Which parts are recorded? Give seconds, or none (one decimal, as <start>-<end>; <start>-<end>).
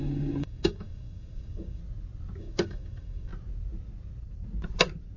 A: 1.8-2.4; 3.3-5.2